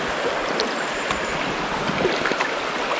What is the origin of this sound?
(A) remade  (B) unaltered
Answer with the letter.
B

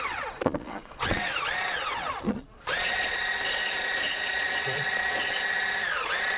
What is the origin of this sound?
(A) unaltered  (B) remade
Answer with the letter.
B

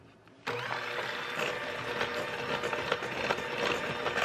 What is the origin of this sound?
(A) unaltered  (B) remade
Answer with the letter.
A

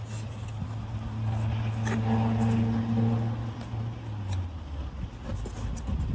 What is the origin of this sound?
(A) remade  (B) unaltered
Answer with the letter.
B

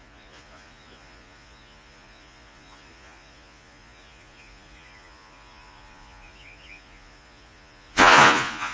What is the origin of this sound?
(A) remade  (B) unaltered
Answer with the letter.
A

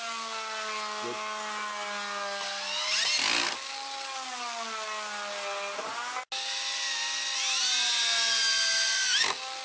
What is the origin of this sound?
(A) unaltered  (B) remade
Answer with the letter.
A